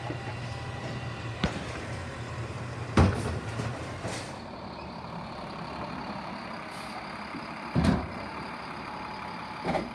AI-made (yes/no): yes